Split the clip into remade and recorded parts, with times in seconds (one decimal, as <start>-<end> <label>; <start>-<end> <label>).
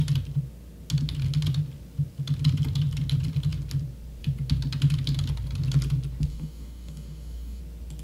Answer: 0.0-6.3 recorded; 6.3-7.6 remade; 7.6-8.0 recorded